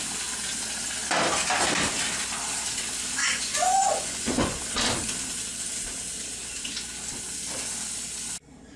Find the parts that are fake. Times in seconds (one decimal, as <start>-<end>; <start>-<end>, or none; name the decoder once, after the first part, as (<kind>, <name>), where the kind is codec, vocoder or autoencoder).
3.2-4.6 (vocoder, Vocos)